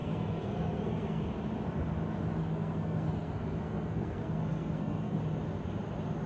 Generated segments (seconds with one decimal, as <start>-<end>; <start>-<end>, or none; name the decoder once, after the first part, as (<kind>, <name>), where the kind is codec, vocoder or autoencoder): 0.0-1.2 (codec, SNAC); 2.3-5.2